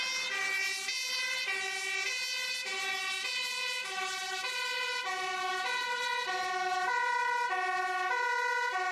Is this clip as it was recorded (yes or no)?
yes